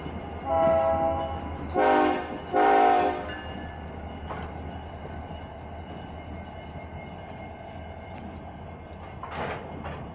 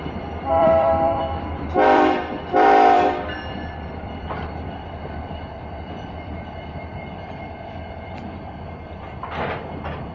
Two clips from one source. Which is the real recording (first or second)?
first